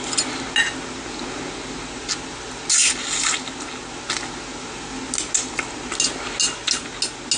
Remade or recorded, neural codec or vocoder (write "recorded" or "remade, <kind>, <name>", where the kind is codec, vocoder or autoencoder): recorded